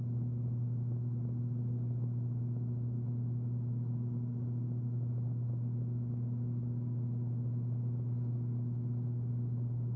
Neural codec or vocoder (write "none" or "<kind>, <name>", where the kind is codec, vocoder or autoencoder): none